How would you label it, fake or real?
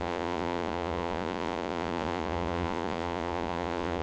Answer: fake